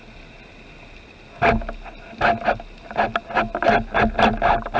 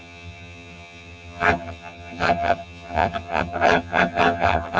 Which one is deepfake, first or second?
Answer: second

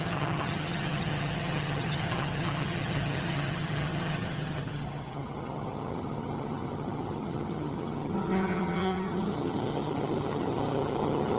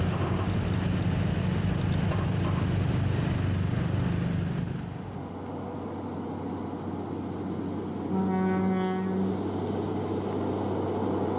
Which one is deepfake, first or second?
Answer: first